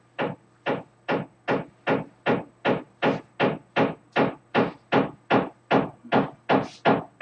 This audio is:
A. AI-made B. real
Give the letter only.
B